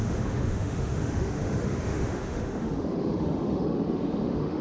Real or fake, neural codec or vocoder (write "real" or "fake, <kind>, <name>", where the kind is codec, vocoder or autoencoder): fake, autoencoder, DAC-VAE